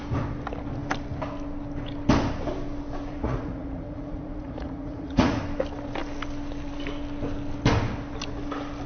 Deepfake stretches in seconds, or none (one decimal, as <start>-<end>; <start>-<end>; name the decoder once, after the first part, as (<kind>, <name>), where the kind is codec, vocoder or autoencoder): 3.1-5.4 (vocoder, Vocos)

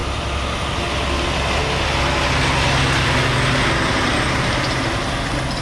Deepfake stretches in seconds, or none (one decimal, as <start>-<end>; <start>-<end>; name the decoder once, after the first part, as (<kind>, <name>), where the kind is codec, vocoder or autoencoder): none

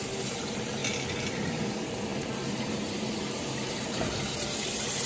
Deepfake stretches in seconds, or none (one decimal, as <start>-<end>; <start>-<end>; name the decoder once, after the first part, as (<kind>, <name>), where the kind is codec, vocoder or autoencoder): 0.0-0.8 (vocoder, BigVGAN v2); 1.5-5.1

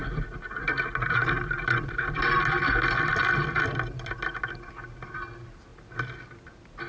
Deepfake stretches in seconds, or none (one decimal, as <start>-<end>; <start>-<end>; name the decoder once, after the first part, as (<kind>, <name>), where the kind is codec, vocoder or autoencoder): none

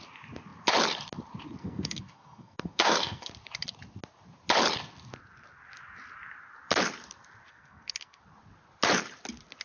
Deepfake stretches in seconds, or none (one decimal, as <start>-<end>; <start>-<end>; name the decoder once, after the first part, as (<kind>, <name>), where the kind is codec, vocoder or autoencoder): 1.6-3.3 (codec, SNAC); 7.5-8.2

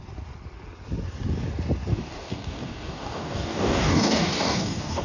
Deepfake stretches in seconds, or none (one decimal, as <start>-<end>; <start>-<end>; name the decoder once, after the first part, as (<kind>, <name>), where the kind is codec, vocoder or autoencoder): 1.9-5.0 (codec, DAC)

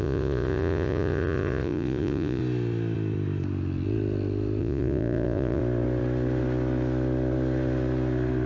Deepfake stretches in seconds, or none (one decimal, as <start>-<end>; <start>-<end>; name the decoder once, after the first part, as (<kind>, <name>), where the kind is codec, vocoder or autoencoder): 0.0-2.4 (vocoder, Vocos); 4.6-5.6

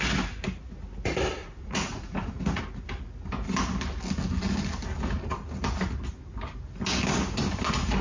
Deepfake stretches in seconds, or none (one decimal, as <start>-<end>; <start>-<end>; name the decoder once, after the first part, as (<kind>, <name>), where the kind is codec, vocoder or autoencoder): 1.4-2.6 (vocoder, Vocos)